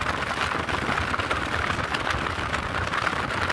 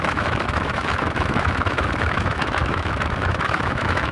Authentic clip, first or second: first